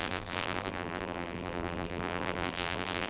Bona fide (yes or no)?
no